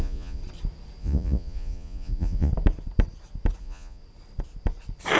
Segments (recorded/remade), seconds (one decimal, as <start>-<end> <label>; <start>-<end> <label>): 0.0-0.4 remade; 0.4-1.0 recorded; 1.0-2.5 remade; 2.5-3.6 recorded; 3.6-4.0 remade; 4.0-5.2 recorded